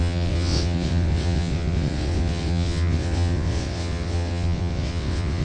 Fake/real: fake